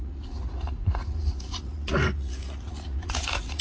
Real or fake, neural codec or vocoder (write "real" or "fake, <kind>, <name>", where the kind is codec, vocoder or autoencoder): fake, vocoder, Vocos